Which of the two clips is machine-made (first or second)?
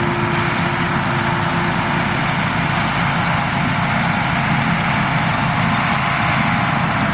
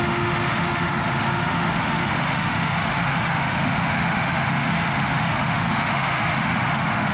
second